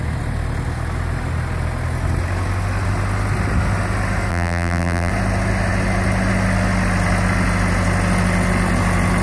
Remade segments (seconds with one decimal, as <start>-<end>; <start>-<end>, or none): 4.3-5.1